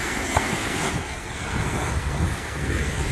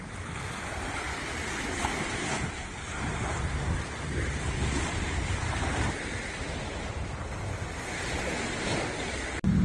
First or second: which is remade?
first